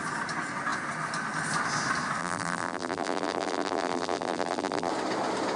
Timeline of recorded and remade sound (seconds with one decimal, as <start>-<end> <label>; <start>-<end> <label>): 0.0-2.2 recorded; 2.2-4.9 remade; 4.9-5.6 recorded